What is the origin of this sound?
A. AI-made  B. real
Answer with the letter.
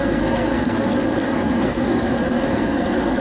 A